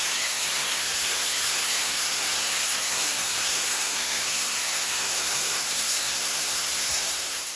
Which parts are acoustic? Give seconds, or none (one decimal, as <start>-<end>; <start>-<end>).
none